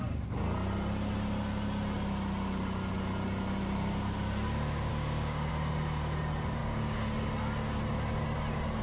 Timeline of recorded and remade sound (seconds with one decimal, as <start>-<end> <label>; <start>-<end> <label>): 0.0-4.9 recorded; 4.9-5.5 remade; 5.5-6.6 recorded; 6.6-7.3 remade; 7.3-8.8 recorded